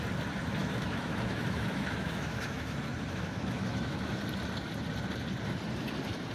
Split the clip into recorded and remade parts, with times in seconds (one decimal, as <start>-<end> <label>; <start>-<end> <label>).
0.0-0.6 recorded; 0.6-4.2 remade; 4.2-6.3 recorded